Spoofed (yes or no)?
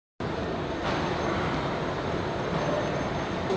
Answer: no